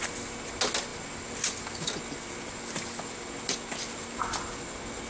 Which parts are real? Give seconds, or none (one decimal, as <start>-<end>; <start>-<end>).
0.0-5.1